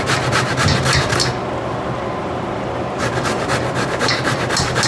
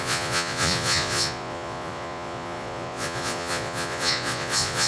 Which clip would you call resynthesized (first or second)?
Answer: second